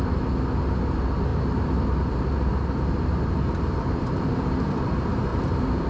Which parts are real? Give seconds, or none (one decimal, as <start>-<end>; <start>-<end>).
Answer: 0.0-1.3; 4.8-5.3